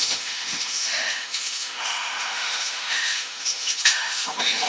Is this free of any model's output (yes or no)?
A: no